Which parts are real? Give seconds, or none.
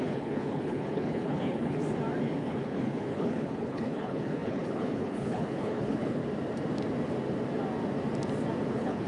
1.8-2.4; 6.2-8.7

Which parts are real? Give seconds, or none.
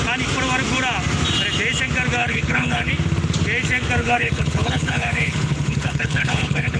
0.0-2.2; 2.9-4.0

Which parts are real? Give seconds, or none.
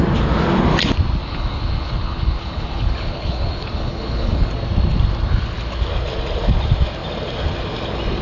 0.0-1.2; 4.5-8.2